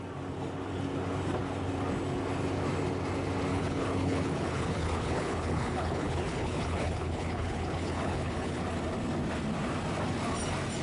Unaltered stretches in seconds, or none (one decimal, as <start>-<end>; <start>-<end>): 0.0-3.5; 8.6-10.8